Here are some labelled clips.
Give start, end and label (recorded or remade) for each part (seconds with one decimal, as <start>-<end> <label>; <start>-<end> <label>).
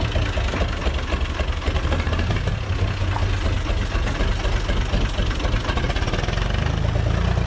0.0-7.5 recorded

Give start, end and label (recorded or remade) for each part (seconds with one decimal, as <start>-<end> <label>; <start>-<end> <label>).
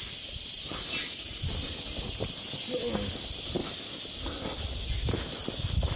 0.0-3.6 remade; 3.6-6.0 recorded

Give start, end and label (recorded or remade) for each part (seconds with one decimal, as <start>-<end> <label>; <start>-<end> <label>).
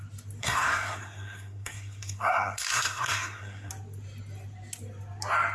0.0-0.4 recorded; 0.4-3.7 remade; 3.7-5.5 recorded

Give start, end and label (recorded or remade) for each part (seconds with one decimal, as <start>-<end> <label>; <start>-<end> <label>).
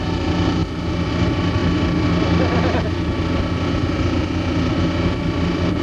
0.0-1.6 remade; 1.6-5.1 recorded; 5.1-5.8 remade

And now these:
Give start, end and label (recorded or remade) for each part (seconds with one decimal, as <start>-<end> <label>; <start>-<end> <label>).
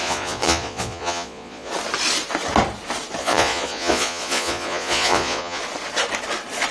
0.0-1.7 remade; 1.7-3.2 recorded; 3.2-5.6 remade; 5.6-6.7 recorded